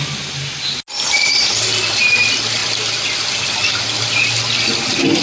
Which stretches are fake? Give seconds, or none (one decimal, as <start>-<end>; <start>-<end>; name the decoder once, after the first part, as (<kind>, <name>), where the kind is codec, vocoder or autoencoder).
none